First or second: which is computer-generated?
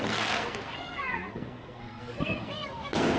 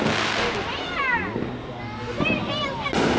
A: first